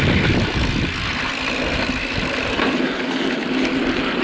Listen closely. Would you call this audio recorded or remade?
recorded